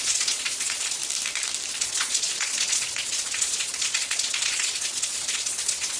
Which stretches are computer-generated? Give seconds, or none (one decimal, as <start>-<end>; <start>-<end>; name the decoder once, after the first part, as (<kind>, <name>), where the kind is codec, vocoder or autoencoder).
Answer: 0.0-1.0 (vocoder, Vocos); 1.7-6.0

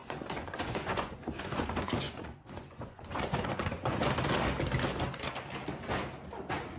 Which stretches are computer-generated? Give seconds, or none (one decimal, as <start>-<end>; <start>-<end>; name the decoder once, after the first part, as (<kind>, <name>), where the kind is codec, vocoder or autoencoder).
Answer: 0.0-4.1 (vocoder, Vocos)

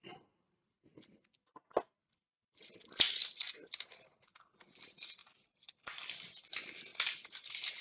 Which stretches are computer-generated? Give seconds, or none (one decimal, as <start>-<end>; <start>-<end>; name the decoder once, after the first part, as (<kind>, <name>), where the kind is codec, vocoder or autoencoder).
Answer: 5.2-6.4 (vocoder, BigVGAN v2)